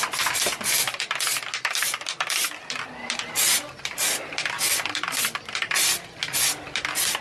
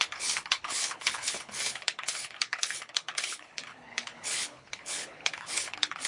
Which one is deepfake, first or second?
second